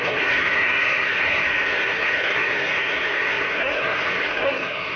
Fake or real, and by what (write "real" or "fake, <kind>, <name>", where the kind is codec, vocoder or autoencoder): fake, codec, SNAC